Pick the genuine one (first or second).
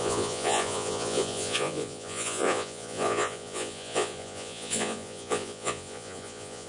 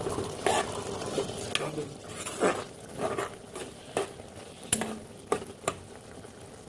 second